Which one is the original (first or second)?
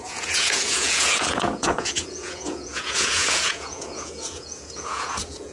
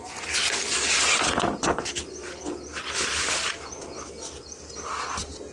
second